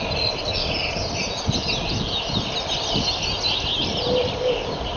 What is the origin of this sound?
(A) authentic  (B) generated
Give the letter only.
A